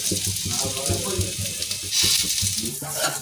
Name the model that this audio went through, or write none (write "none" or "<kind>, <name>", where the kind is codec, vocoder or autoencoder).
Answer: none